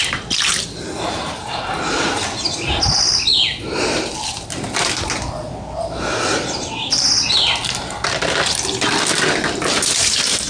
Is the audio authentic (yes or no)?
yes